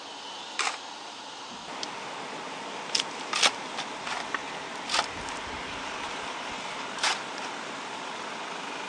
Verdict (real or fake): real